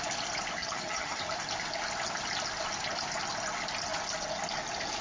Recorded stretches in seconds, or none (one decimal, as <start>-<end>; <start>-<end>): 0.0-0.6; 1.2-5.0